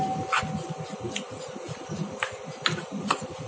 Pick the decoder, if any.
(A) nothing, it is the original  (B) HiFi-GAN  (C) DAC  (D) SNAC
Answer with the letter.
A